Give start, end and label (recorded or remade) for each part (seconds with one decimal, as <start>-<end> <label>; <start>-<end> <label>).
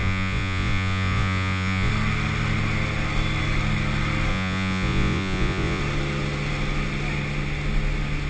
0.0-1.9 remade; 1.9-4.3 recorded; 4.3-5.8 remade; 5.8-8.3 recorded